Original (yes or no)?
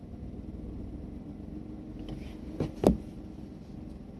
yes